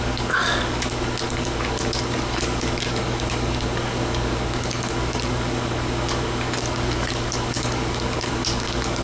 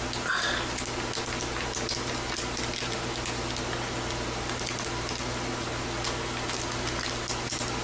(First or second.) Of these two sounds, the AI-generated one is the first